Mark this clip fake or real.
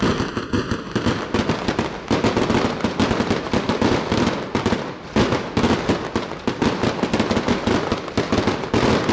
real